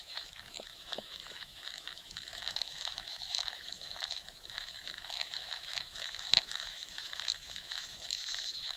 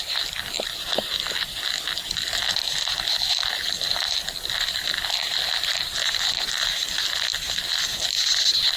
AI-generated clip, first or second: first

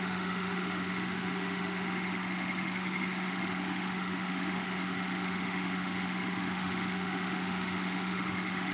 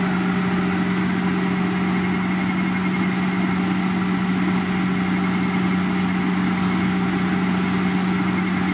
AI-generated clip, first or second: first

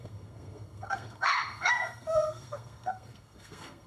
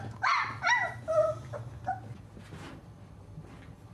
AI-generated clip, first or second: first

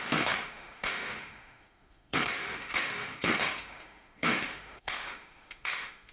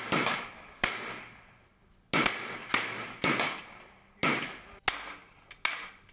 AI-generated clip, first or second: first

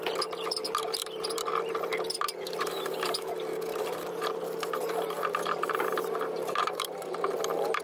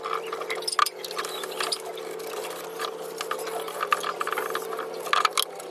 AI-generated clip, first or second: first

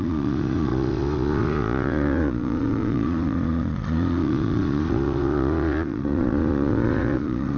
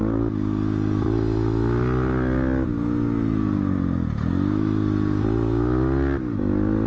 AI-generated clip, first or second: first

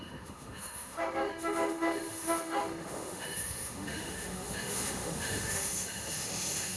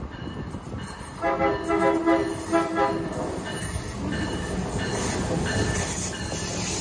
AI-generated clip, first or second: first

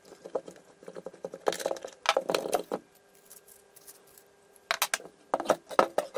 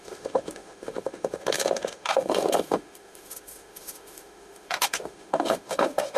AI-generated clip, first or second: second